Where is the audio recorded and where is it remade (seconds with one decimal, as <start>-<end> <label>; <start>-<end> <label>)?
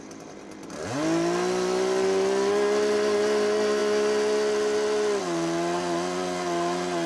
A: 0.0-7.1 recorded